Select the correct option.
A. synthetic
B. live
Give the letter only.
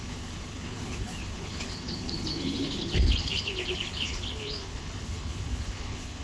A